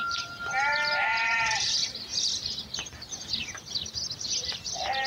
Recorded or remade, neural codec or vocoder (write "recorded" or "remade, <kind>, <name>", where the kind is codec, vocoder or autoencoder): remade, vocoder, BigVGAN v2